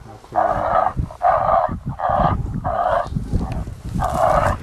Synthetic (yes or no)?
yes